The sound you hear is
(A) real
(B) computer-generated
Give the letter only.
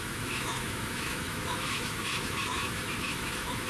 B